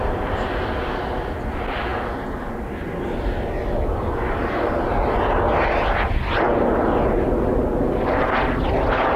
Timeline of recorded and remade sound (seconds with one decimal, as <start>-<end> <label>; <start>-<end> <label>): 0.0-9.2 recorded